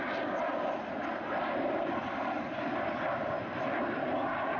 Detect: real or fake fake